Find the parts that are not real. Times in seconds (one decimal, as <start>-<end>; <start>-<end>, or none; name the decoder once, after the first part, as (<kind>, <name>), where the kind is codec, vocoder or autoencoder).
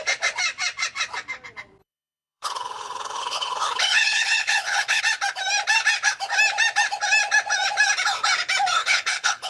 1.8-5.0 (codec, HILCodec); 8.8-9.5